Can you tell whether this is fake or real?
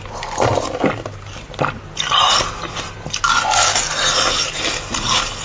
real